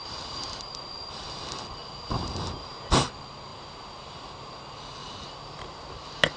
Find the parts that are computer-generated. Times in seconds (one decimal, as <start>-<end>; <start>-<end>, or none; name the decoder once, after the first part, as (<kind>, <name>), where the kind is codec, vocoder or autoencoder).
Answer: 1.8-2.5 (vocoder, BigVGAN v2); 3.5-4.5; 5.0-5.8